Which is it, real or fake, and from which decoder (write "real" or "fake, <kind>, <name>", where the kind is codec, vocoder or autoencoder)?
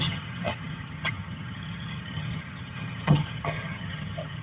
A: fake, vocoder, HiFi-GAN